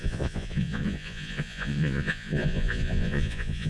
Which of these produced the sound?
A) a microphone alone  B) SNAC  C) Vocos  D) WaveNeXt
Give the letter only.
C